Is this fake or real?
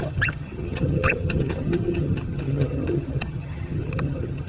fake